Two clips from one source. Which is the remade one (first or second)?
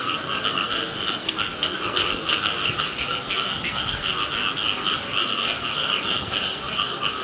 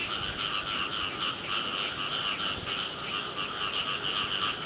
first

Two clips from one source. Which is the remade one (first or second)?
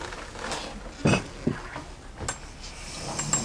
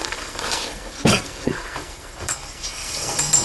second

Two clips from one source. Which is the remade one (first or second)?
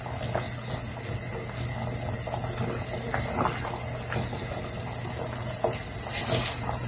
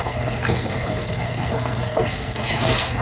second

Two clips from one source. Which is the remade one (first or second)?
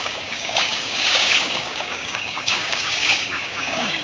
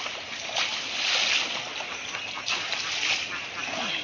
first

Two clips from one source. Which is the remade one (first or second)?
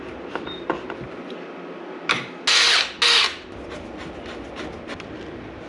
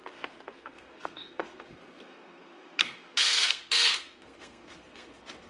second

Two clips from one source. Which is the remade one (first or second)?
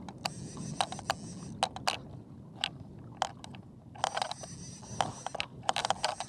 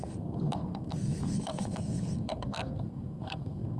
second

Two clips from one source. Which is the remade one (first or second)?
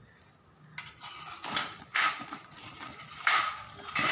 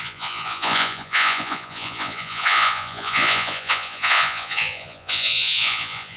second